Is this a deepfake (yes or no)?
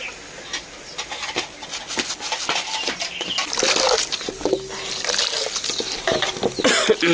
no